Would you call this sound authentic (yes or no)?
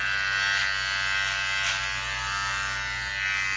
yes